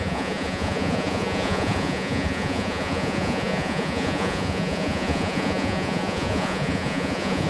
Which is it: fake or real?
fake